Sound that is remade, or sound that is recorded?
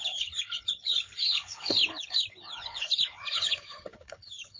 remade